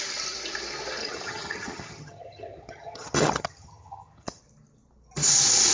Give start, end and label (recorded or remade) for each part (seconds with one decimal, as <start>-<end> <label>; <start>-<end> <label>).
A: 0.0-1.0 recorded; 1.0-4.4 remade; 4.4-5.7 recorded